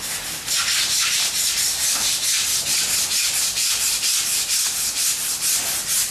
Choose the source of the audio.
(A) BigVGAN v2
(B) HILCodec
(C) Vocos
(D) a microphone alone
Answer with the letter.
D